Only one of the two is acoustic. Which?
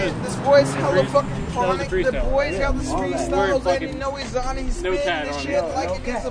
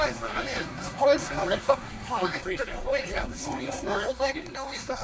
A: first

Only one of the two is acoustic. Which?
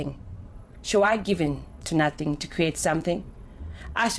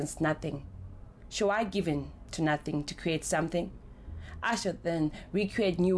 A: second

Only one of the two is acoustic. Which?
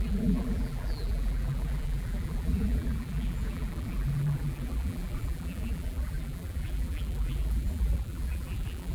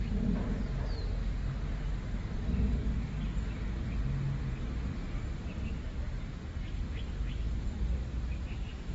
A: second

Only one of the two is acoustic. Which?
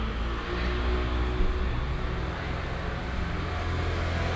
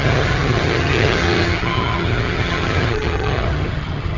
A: first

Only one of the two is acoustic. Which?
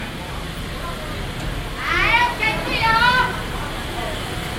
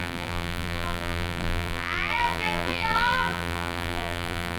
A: first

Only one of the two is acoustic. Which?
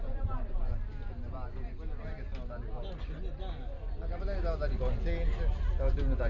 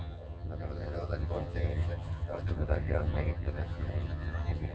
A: first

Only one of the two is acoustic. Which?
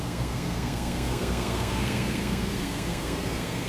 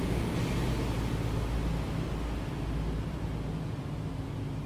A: second